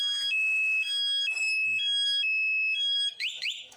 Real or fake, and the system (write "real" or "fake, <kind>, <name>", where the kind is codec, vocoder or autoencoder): fake, autoencoder, DAC-VAE